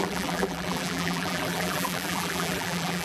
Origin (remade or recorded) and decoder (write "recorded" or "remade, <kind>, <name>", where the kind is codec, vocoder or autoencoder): remade, vocoder, BigVGAN v2